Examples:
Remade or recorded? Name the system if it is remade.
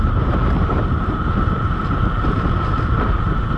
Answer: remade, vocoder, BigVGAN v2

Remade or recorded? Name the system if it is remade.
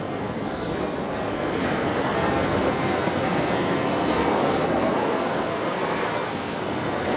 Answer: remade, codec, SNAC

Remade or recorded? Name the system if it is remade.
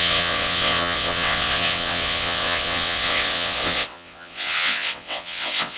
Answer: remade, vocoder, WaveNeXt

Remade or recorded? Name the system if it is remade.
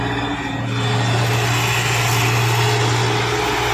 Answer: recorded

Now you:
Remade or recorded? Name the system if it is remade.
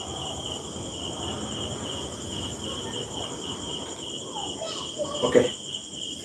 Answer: recorded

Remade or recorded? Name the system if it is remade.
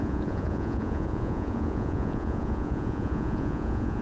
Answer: remade, vocoder, Vocos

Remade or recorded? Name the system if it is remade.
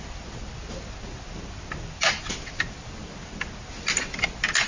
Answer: recorded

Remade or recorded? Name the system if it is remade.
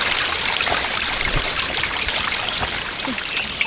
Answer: recorded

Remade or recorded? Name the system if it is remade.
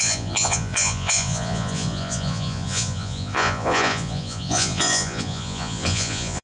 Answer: remade, vocoder, Vocos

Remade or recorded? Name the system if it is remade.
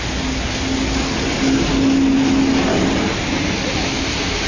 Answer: recorded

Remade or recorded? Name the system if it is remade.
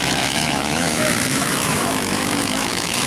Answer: remade, autoencoder, DAC-VAE